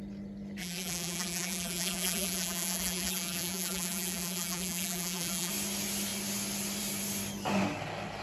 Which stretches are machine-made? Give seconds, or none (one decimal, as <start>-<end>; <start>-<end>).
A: 0.6-5.5